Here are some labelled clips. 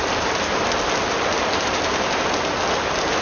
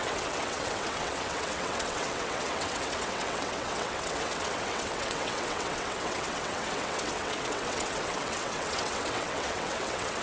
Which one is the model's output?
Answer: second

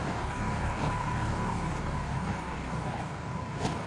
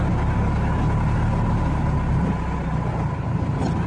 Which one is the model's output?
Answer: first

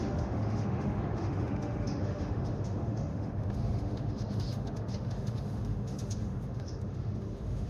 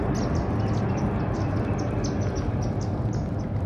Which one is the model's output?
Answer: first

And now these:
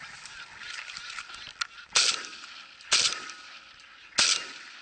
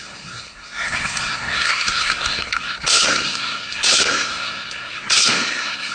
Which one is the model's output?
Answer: second